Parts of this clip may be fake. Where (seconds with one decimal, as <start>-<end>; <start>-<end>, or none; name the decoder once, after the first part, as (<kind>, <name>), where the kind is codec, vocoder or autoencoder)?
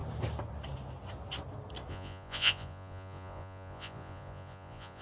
1.9-5.0 (vocoder, Vocos)